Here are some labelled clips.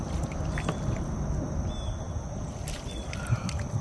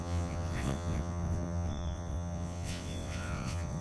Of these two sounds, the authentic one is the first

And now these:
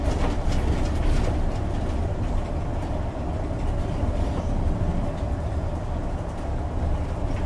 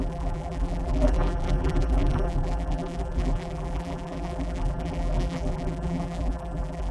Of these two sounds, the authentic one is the first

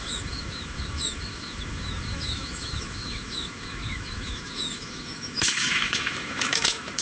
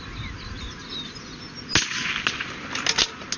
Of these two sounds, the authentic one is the second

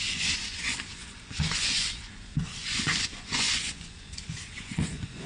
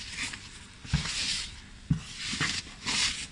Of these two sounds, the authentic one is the second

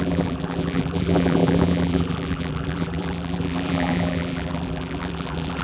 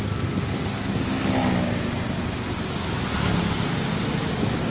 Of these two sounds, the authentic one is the second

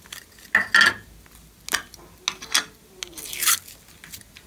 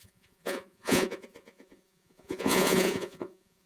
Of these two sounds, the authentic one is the first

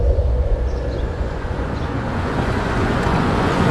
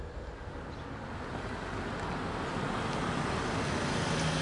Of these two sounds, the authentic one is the second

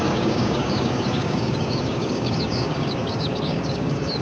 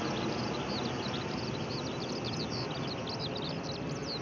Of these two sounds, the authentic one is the second